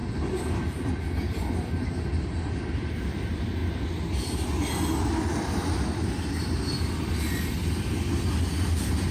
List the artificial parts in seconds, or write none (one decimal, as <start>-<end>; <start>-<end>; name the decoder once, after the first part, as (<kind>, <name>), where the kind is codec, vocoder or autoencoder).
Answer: none